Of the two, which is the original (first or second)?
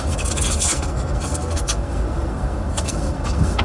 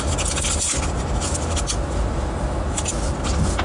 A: second